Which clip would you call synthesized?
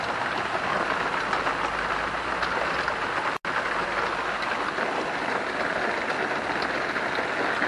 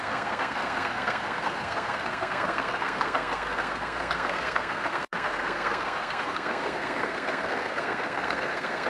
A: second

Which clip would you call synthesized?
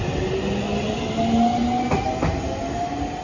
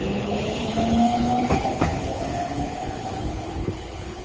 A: second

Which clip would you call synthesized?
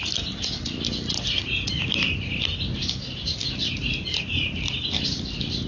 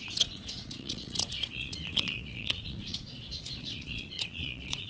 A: second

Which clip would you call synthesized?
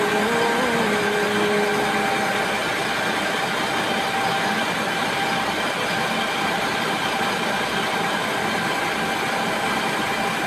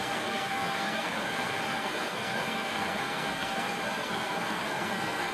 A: second